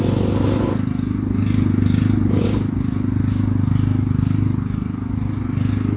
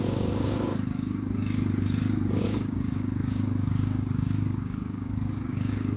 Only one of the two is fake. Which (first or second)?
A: second